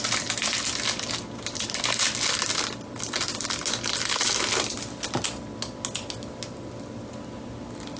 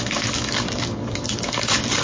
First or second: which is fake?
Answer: second